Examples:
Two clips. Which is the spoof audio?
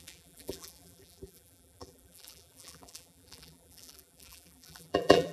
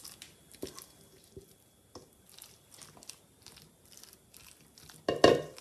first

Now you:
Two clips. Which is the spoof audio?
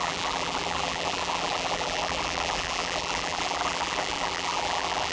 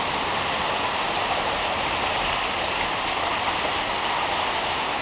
first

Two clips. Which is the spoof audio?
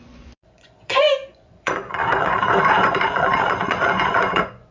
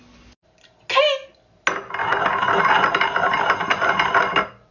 first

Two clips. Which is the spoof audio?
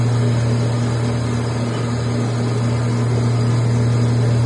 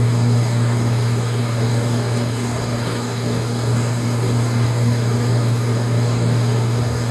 second